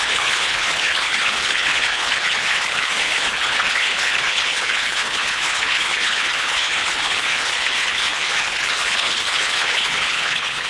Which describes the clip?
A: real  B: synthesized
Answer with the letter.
B